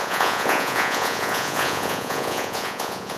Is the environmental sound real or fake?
fake